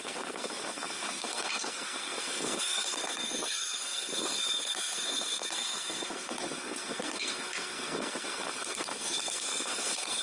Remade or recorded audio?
remade